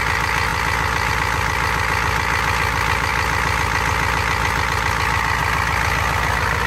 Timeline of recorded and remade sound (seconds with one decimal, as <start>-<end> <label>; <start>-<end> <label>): 0.0-6.7 recorded